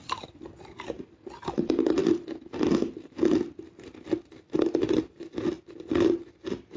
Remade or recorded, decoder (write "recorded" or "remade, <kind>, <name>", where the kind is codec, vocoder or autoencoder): recorded